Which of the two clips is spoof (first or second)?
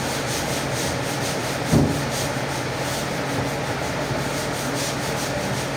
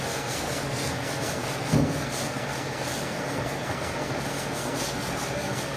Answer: second